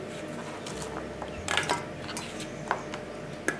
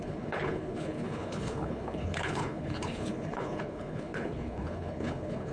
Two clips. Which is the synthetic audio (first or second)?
second